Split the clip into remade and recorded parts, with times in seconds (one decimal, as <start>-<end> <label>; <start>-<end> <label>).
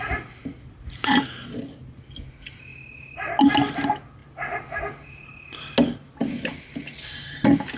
0.0-7.8 recorded